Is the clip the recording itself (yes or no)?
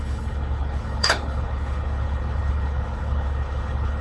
no